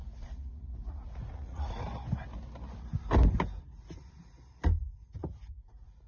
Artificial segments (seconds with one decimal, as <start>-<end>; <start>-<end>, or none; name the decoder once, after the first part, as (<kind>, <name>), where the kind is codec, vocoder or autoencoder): 0.0-1.8 (vocoder, Vocos); 4.8-6.1